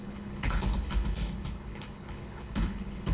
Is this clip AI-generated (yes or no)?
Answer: yes